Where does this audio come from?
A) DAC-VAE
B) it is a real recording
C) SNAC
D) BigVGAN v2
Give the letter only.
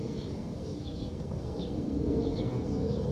C